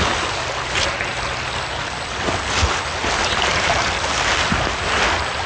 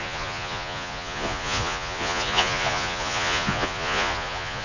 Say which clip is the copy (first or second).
second